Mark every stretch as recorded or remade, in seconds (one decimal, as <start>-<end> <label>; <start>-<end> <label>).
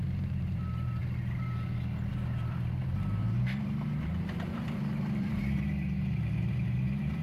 0.0-1.0 remade; 1.0-2.1 recorded; 2.1-7.2 remade